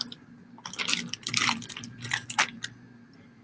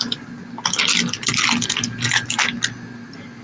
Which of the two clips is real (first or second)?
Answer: second